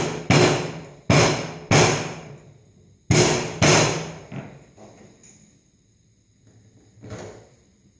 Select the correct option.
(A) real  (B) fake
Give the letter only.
A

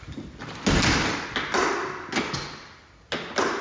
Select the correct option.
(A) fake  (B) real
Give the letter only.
B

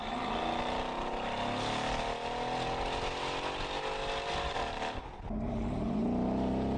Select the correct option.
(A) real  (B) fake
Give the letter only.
A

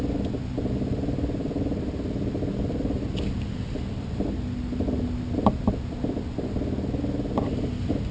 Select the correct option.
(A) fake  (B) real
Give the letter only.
B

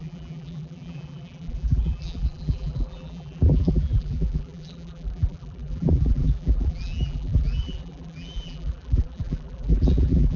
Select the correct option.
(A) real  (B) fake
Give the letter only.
B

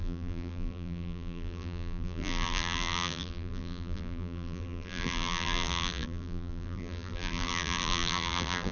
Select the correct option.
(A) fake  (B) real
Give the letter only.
A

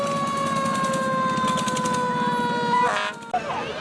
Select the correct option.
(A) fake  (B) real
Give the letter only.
B